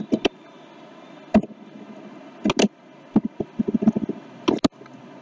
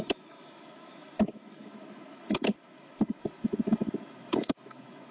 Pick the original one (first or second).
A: first